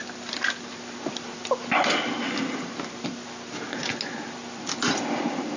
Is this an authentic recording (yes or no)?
yes